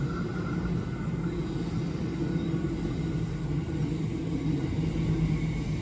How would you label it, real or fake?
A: real